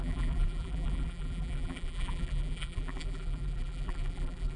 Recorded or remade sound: remade